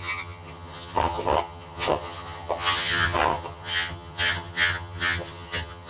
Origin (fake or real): fake